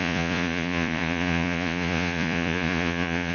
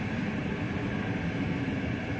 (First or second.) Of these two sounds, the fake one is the first